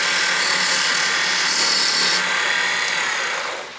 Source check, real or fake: real